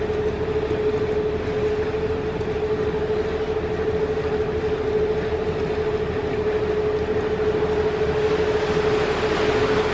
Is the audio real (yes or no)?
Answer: yes